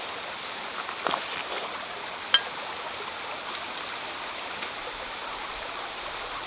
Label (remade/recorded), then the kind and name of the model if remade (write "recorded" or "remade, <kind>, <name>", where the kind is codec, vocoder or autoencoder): recorded